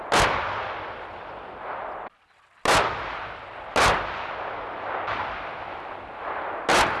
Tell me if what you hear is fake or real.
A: real